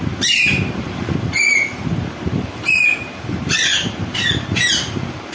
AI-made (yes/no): yes